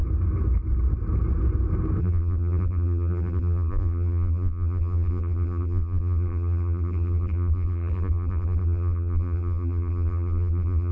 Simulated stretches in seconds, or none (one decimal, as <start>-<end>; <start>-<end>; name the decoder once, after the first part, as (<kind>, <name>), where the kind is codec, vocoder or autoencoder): 2.0-10.9 (vocoder, BigVGAN v2)